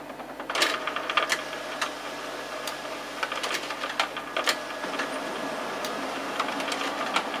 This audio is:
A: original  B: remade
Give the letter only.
A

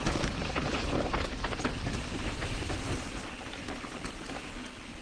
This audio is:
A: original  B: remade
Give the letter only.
A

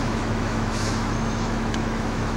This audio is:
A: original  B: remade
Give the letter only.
B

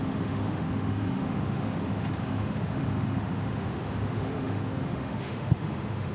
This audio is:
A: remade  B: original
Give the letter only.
A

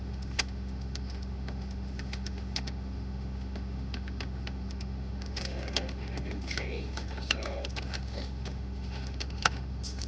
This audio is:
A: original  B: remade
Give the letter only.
B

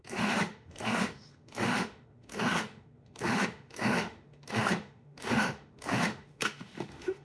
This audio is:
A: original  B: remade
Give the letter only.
B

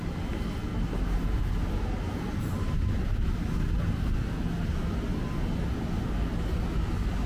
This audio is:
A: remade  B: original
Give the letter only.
B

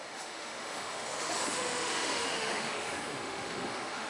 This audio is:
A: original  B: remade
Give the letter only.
B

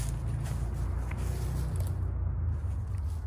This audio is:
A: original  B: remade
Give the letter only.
A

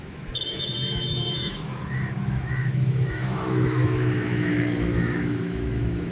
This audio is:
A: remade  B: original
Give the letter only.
A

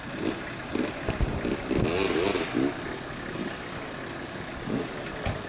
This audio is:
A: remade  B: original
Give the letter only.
B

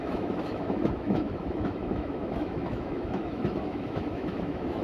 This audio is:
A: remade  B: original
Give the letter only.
A